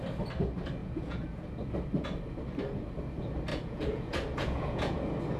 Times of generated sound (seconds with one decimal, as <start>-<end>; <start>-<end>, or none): 0.8-1.4; 3.5-5.0